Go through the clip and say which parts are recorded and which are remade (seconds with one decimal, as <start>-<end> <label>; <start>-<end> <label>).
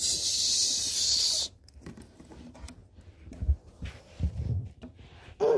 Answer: 0.0-2.8 recorded; 2.8-4.3 remade; 4.3-5.6 recorded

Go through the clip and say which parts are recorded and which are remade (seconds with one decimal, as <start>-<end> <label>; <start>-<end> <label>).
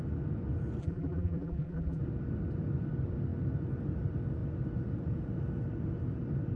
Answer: 0.0-0.8 recorded; 0.8-2.0 remade; 2.0-6.6 recorded